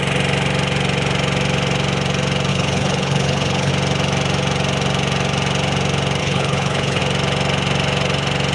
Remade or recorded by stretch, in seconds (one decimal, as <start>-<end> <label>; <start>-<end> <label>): 0.0-2.5 recorded; 2.5-3.7 remade; 3.7-6.2 recorded; 6.2-7.0 remade; 7.0-8.5 recorded